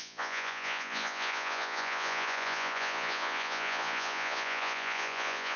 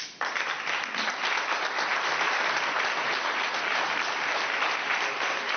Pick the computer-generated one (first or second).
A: first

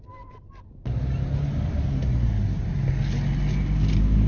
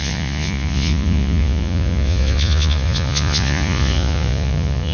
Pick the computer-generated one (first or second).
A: second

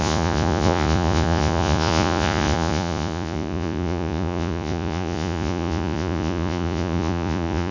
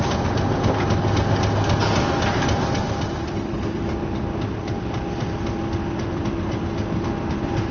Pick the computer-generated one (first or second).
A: first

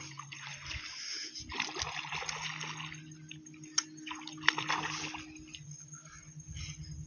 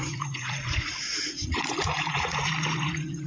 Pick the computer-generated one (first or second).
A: second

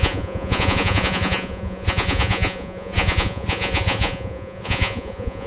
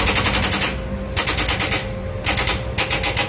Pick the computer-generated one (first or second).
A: first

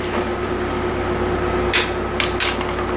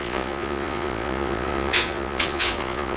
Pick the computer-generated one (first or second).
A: second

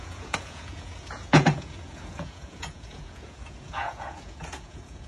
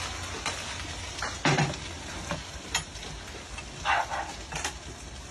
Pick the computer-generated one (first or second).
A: first